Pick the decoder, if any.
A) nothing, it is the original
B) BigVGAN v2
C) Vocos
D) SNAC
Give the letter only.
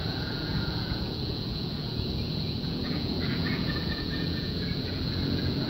C